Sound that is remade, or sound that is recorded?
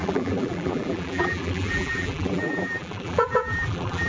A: remade